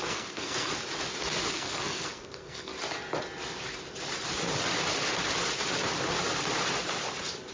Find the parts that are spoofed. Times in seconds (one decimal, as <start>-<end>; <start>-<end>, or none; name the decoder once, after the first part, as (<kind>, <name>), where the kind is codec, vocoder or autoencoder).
0.0-0.7 (codec, SNAC); 1.5-2.7